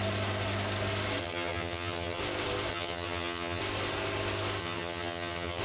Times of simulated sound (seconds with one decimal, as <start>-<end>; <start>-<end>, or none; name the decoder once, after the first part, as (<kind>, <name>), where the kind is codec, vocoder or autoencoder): 1.2-2.2 (vocoder, HiFi-GAN); 2.7-3.6; 4.6-5.6